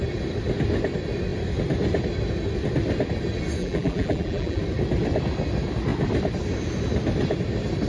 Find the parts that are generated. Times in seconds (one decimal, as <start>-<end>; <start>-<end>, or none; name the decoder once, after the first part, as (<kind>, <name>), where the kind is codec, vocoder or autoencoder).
3.6-4.6 (vocoder, BigVGAN v2)